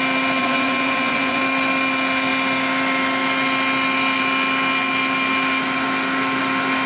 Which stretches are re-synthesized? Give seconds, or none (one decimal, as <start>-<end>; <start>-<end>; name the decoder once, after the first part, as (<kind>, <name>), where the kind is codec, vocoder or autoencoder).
0.4-1.4 (vocoder, Vocos)